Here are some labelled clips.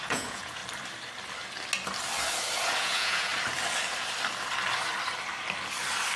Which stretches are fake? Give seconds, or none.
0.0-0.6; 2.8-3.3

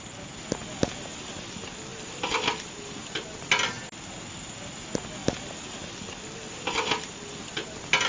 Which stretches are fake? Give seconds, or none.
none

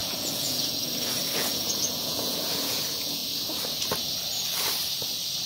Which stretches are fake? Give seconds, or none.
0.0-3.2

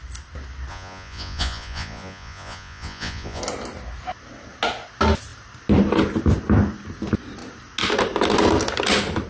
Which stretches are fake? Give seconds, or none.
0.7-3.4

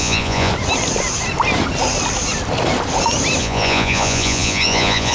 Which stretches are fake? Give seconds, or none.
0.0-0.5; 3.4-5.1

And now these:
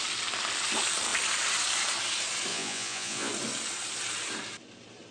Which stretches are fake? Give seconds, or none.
2.5-3.3

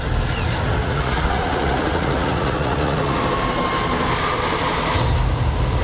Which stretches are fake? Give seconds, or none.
0.8-3.2

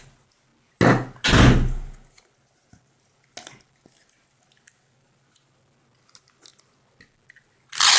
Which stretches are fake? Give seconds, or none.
none